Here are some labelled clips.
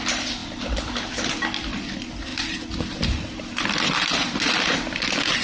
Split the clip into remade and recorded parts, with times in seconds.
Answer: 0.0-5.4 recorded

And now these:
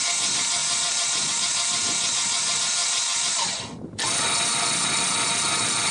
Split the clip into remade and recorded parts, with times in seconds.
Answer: 0.0-5.9 recorded

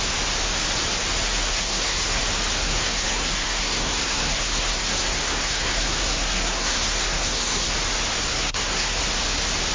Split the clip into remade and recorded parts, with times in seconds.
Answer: 0.0-1.5 recorded; 1.5-2.2 remade; 2.2-2.6 recorded; 2.6-7.7 remade; 7.7-8.3 recorded; 8.3-9.0 remade; 9.0-9.7 recorded

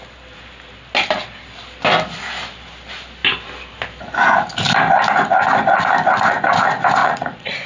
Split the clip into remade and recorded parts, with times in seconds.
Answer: 0.0-7.0 recorded; 7.0-7.7 remade

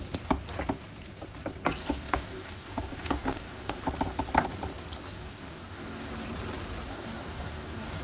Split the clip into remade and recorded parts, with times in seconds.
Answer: 0.0-1.8 recorded; 1.8-3.8 remade; 3.8-5.1 recorded; 5.1-6.1 remade; 6.1-6.9 recorded; 6.9-8.0 remade